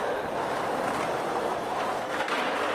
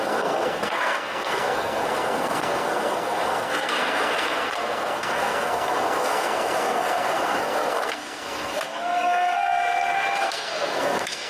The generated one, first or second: second